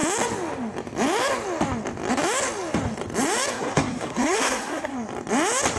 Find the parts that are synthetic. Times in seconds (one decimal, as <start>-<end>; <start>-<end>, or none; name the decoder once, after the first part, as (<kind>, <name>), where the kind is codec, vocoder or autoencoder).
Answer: 3.5-4.9 (codec, SNAC)